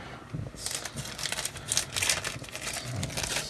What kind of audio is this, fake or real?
real